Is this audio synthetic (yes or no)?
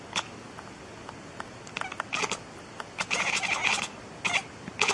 no